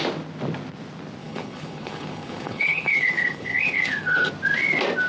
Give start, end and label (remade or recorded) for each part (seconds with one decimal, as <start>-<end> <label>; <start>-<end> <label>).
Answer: 0.0-1.2 recorded; 1.2-4.3 remade; 4.3-5.1 recorded